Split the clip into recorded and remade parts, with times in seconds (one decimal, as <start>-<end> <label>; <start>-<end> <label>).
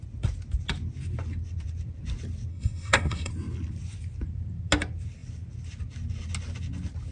0.0-2.5 recorded; 2.5-3.3 remade; 3.3-7.1 recorded